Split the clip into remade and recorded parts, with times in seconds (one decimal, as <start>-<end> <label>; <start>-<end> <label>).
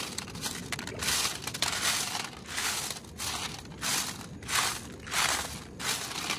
0.0-6.4 recorded